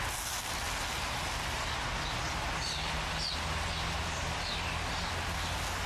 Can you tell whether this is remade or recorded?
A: recorded